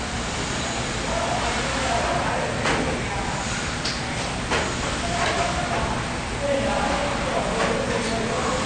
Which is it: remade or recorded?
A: recorded